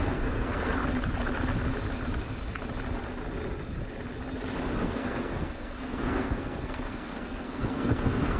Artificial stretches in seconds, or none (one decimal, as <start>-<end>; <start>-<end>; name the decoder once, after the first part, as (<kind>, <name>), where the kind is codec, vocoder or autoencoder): 0.0-0.8 (codec, SNAC); 4.8-8.4